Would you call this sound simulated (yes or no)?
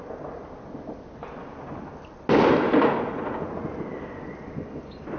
no